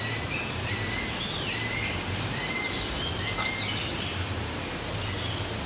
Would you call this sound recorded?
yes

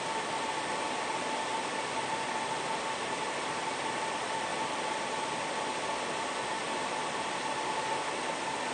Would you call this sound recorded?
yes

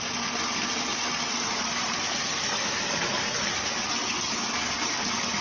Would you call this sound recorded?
yes